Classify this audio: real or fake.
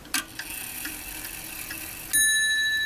real